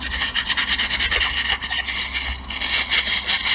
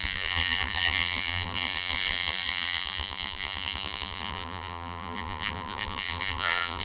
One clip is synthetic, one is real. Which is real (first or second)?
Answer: first